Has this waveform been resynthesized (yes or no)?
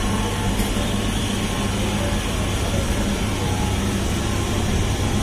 no